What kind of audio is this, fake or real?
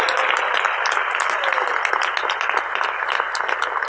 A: real